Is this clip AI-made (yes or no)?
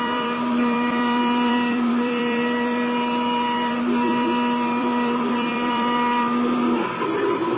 yes